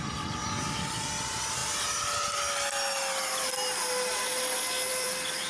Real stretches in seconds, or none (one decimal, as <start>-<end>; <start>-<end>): 0.4-1.2; 1.6-4.9